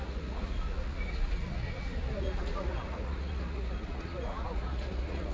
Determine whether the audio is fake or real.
fake